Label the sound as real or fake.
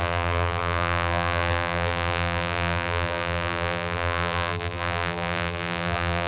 fake